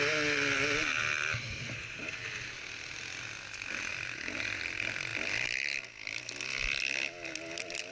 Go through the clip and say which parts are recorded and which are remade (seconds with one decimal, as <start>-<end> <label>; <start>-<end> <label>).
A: 0.0-7.9 recorded